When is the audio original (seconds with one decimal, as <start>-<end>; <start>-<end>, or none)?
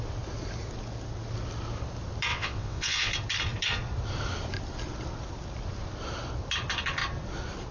0.0-2.3; 3.1-7.7